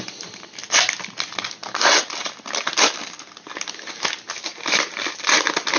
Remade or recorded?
recorded